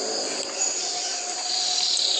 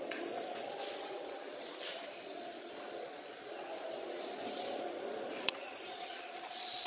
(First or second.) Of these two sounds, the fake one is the second